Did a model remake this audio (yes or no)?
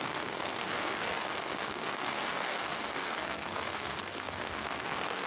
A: yes